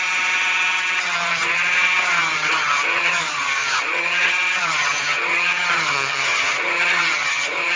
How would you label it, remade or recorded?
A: remade